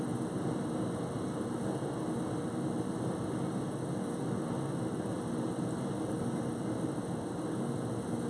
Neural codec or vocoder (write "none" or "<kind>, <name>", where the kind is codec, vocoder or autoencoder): none